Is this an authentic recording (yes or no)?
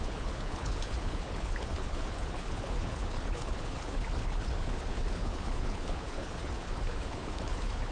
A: no